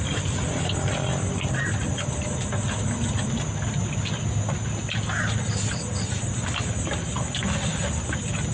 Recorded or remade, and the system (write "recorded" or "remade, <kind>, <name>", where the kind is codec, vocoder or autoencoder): recorded